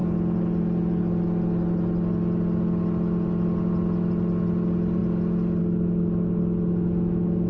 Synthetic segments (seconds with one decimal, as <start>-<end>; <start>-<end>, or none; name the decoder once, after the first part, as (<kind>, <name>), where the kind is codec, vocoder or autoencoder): none

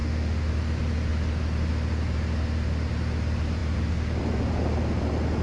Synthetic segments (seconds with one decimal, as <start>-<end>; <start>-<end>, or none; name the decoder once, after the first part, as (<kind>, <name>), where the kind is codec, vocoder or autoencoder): 0.0-0.5 (autoencoder, DAC-VAE)

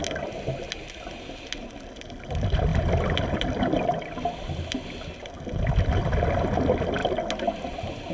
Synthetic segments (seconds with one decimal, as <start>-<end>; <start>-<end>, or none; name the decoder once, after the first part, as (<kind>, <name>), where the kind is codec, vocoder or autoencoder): none

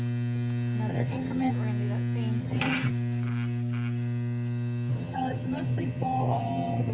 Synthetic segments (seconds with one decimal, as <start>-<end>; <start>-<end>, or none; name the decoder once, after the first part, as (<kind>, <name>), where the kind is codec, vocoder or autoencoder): 0.9-1.5 (vocoder, HiFi-GAN); 2.4-2.9; 4.9-6.9